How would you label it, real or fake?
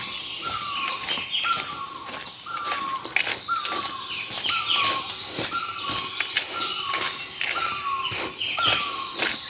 real